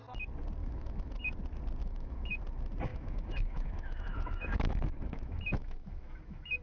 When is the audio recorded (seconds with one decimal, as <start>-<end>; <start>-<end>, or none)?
0.0-0.6; 1.2-1.8; 2.4-2.9